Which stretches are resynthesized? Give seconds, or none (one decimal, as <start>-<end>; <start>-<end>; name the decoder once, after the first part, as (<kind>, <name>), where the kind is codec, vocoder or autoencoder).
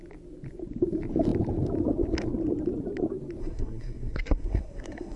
3.4-5.2 (codec, SNAC)